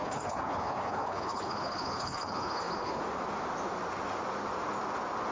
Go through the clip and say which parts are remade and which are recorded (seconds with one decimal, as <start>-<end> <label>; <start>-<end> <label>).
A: 0.0-3.0 remade; 3.0-5.3 recorded